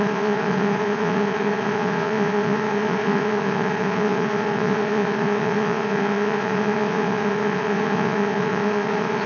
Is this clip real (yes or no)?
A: no